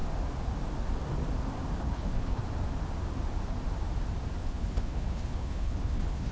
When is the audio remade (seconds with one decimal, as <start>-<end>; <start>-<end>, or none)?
1.8-2.4; 4.4-6.3